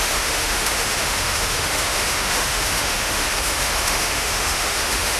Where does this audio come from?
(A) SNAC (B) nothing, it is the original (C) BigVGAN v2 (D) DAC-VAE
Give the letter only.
D